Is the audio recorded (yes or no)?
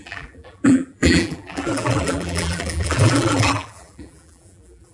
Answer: no